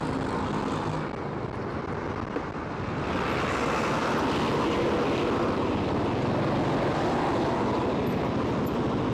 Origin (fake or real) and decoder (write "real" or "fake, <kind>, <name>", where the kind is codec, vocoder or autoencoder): real